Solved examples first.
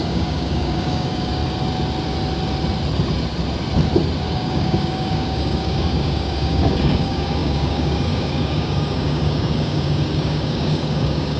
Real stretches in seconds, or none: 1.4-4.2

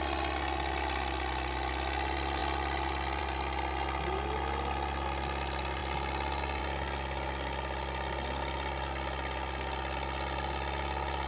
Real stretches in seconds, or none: 0.0-11.3